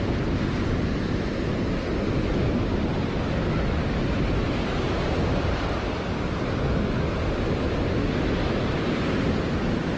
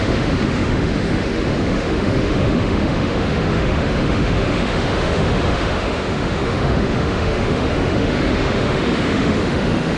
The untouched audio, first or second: first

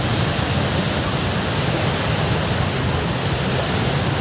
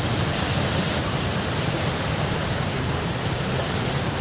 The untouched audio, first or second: first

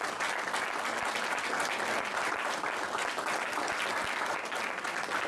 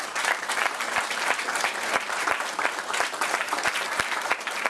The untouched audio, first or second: first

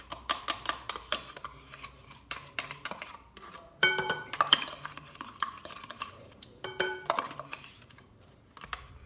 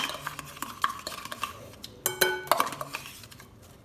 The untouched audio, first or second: second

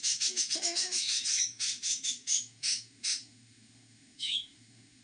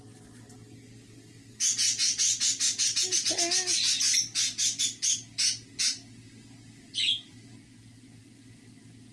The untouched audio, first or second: second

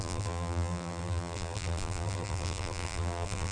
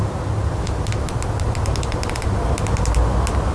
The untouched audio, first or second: second